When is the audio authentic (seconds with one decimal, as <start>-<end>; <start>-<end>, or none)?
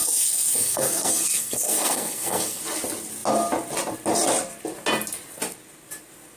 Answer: 2.6-6.4